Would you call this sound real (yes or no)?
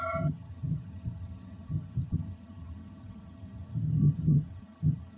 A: no